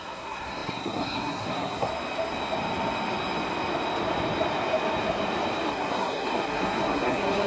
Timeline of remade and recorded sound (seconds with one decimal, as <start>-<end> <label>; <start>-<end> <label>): 0.0-1.9 remade; 1.9-5.7 recorded; 5.7-7.5 remade